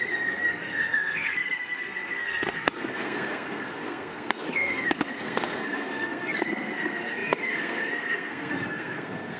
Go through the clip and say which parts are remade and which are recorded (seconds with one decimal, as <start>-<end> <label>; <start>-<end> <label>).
0.0-9.4 remade